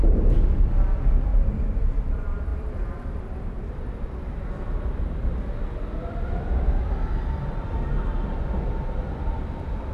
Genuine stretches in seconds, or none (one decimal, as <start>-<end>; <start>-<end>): 1.3-2.0